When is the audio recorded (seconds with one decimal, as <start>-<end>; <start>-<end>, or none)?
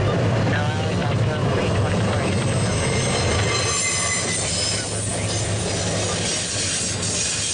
0.0-7.5